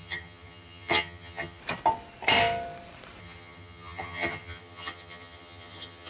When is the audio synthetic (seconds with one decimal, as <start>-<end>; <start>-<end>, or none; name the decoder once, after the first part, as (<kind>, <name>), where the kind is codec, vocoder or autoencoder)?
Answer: 0.0-1.6 (vocoder, HiFi-GAN); 3.2-6.1